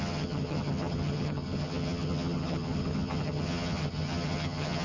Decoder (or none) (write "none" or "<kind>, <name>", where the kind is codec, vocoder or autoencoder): vocoder, HiFi-GAN